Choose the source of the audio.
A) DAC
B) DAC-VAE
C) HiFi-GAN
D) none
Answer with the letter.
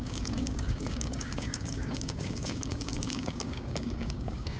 A